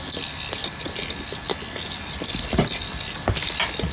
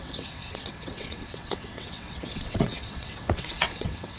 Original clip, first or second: first